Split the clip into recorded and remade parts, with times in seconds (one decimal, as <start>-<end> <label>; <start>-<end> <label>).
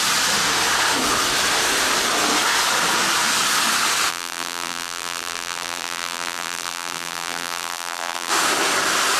0.0-4.1 recorded; 4.1-8.3 remade; 8.3-9.2 recorded